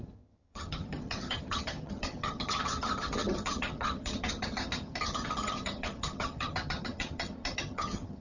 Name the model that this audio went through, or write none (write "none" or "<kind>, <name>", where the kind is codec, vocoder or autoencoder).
vocoder, HiFi-GAN